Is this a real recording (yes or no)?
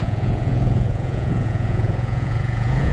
no